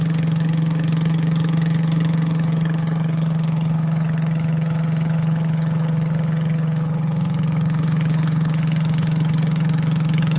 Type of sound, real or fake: fake